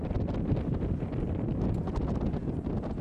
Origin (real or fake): real